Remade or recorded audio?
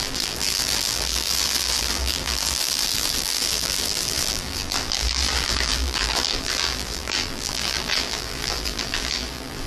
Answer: remade